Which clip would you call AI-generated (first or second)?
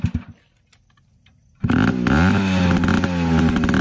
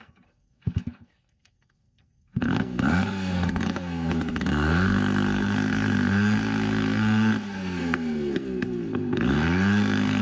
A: second